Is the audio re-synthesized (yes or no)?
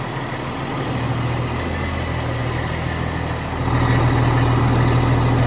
no